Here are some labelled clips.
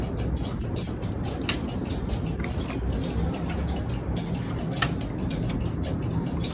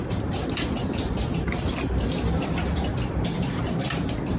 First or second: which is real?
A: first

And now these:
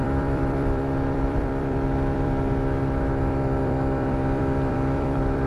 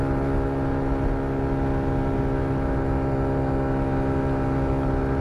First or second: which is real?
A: second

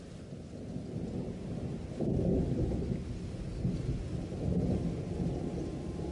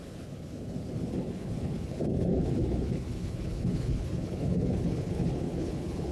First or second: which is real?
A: first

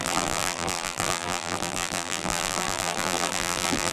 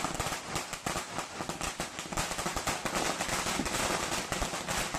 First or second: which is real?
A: second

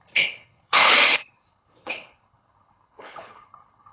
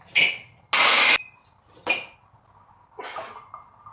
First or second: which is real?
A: second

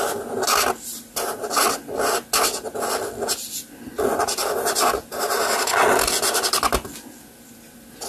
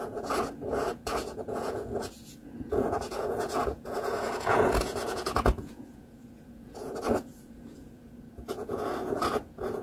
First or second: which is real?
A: first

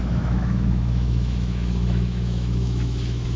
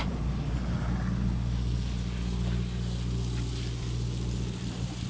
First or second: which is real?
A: second